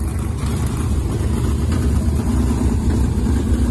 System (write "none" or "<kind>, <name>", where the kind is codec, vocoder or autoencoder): none